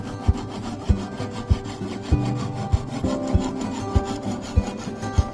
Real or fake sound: real